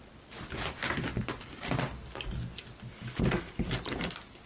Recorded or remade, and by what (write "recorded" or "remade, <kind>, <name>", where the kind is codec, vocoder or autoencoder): recorded